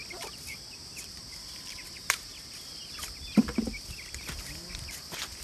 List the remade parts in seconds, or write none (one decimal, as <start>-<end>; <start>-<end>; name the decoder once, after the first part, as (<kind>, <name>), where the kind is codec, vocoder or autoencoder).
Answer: none